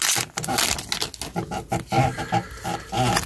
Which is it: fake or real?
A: real